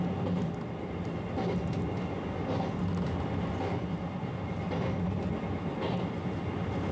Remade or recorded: recorded